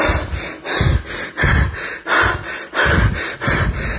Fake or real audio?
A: real